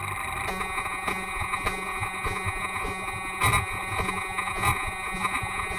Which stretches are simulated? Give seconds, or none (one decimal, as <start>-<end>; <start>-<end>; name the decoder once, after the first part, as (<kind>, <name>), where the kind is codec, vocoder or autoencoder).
0.5-5.8 (vocoder, Vocos)